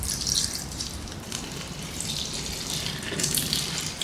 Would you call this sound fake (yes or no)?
yes